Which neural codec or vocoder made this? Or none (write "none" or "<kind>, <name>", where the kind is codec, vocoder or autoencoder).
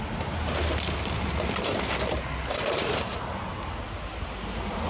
none